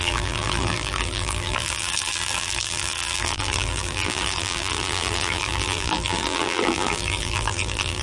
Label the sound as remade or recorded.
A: remade